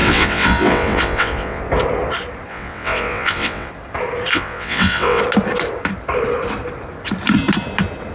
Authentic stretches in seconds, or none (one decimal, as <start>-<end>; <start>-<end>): 1.6-2.5; 3.7-4.3; 5.2-8.1